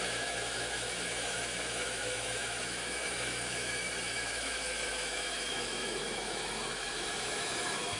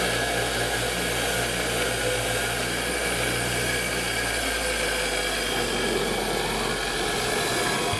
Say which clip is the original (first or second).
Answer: second